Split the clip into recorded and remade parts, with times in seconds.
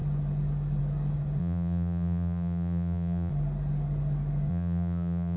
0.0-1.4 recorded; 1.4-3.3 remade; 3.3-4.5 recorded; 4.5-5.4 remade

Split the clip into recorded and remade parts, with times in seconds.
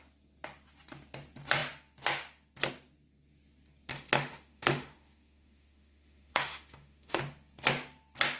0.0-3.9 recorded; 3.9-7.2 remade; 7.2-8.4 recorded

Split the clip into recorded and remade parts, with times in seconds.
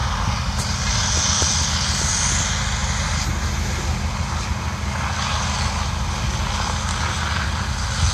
0.0-8.1 recorded